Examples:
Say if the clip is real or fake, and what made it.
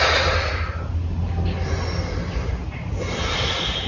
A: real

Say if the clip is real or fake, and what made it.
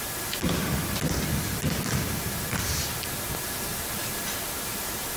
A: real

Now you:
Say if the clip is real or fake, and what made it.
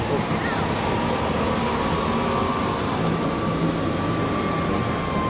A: real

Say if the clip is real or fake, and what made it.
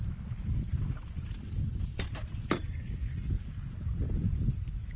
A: real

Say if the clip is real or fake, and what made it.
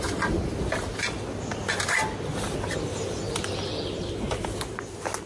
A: real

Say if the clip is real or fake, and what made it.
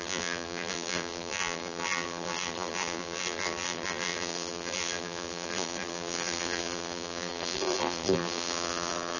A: fake, vocoder, BigVGAN v2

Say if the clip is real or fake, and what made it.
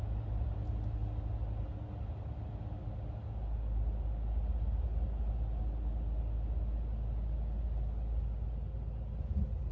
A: real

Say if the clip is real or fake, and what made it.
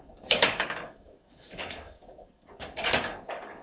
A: fake, codec, DAC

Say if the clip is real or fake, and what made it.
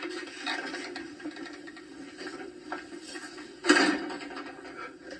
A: real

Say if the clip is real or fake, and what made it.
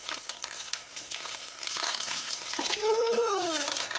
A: fake, codec, SNAC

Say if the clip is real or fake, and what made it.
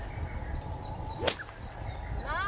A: real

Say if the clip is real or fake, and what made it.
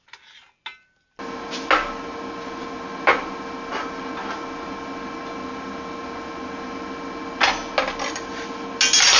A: real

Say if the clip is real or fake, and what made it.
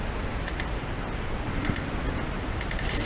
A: fake, vocoder, BigVGAN v2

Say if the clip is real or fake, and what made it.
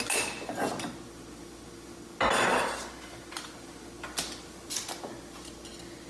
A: real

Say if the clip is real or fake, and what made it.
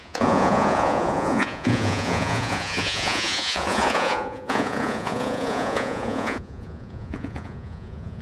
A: fake, vocoder, Vocos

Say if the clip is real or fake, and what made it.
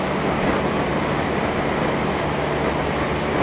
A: real